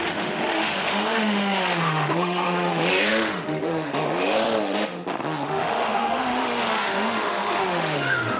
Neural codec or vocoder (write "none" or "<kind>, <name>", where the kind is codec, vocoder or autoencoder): autoencoder, DAC-VAE